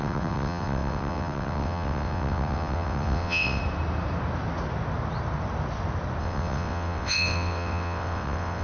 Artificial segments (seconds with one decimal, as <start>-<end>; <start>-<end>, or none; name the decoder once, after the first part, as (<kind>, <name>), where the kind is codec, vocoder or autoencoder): 0.0-3.6 (vocoder, WaveNeXt); 6.2-8.6